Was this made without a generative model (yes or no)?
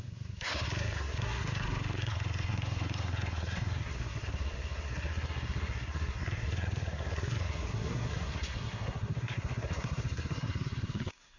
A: no